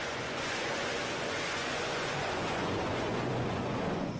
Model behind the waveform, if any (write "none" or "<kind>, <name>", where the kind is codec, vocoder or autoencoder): vocoder, Vocos